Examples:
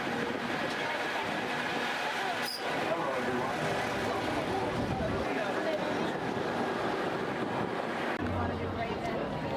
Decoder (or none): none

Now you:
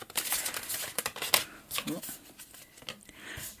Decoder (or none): none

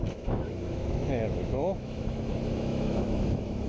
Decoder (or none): autoencoder, DAC-VAE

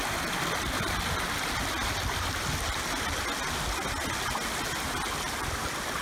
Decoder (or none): none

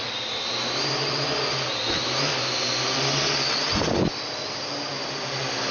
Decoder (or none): none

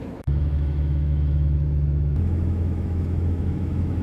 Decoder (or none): autoencoder, DAC-VAE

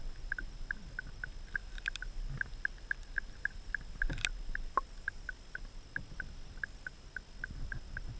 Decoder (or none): none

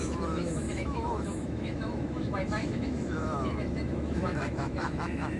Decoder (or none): autoencoder, DAC-VAE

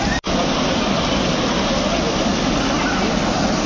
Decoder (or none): none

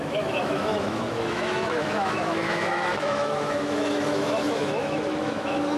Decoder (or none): autoencoder, DAC-VAE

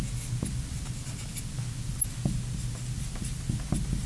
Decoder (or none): none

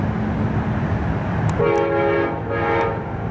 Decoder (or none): none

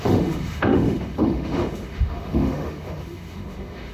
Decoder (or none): autoencoder, DAC-VAE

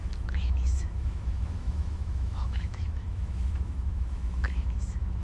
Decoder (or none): autoencoder, DAC-VAE